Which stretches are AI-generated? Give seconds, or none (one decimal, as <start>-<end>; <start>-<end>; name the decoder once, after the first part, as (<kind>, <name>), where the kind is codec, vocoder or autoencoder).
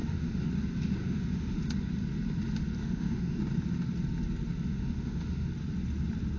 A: 0.0-0.5 (autoencoder, DAC-VAE); 1.0-1.6; 2.8-3.4; 4.7-5.5